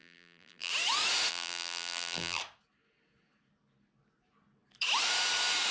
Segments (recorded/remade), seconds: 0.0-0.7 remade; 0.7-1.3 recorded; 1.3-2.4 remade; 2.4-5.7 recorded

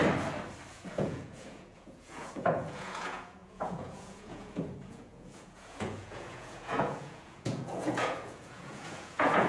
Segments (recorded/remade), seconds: 0.0-0.7 recorded; 0.7-9.5 remade

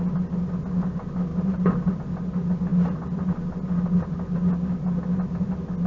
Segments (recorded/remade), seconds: 0.0-1.3 recorded; 1.3-1.9 remade; 1.9-5.9 recorded

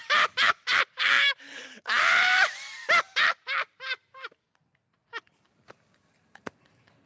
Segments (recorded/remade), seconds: 0.0-2.8 remade; 2.8-7.1 recorded

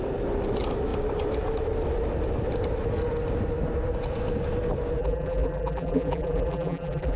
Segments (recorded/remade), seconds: 0.0-5.0 recorded; 5.0-7.2 remade